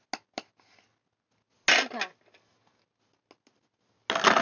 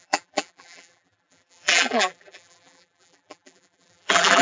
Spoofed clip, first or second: second